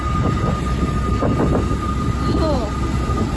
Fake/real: real